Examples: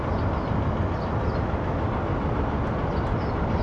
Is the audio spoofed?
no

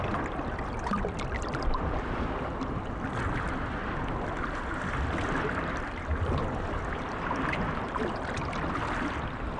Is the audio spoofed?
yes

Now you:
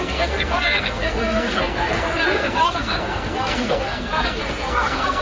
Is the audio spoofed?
yes